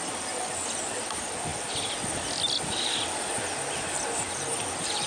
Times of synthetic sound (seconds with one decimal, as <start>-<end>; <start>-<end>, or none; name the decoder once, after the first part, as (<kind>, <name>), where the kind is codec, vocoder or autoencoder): none